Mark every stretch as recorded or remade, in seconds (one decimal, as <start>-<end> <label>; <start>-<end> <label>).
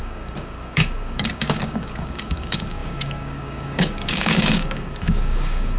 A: 0.0-5.8 remade